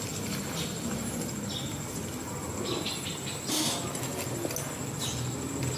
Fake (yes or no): no